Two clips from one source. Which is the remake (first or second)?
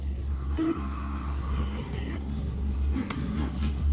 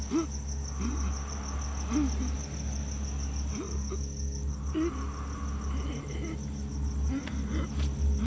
first